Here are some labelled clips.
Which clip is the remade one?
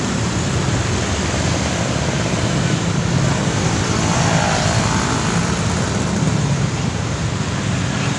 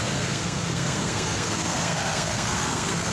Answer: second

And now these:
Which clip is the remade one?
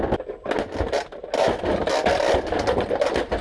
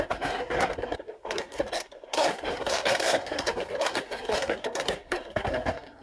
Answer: second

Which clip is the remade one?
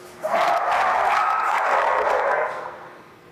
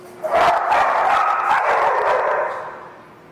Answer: first